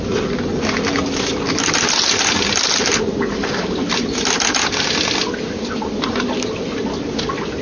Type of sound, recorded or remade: recorded